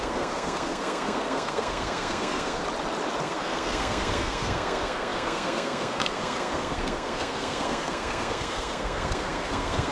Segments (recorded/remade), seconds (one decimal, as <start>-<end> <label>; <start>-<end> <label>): 0.0-2.6 remade; 2.6-3.2 recorded; 3.2-9.9 remade

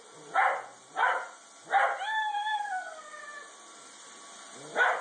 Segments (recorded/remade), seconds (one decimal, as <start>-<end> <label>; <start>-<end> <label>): 0.0-2.4 recorded; 2.4-3.2 remade; 3.2-5.0 recorded

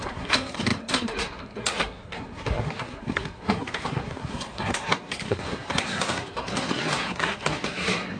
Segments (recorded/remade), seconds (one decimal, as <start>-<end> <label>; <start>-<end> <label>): 0.0-8.2 remade

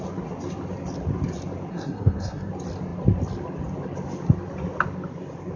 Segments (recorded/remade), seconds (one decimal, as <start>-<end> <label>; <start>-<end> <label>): 0.0-1.7 recorded; 1.7-2.5 remade; 2.5-5.6 recorded

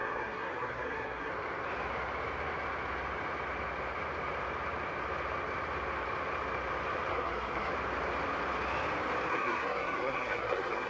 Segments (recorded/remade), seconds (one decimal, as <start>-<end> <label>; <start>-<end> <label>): 0.0-1.3 remade; 1.3-7.1 recorded; 7.1-7.7 remade; 7.7-9.3 recorded; 9.3-10.9 remade

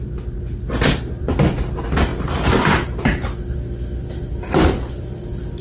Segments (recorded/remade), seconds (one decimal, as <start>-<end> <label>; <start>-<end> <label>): 0.0-5.6 recorded

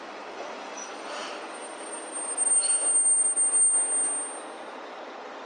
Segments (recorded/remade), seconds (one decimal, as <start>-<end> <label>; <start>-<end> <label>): 0.0-5.5 recorded